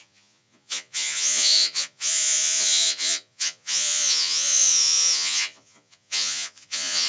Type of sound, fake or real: fake